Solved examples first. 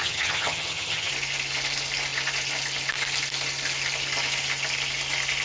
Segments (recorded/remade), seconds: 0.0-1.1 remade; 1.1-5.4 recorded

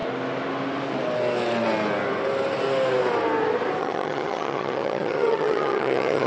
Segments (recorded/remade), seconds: 0.0-3.8 recorded; 3.8-6.3 remade

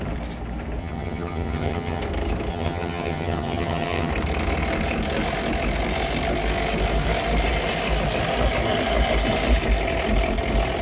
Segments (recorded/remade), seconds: 0.0-0.8 recorded; 0.8-2.0 remade; 2.0-2.5 recorded; 2.5-4.1 remade; 4.1-10.8 recorded